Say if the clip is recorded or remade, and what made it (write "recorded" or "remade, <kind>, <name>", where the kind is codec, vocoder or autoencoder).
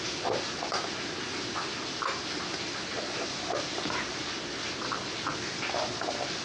recorded